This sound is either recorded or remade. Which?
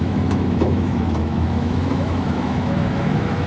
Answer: remade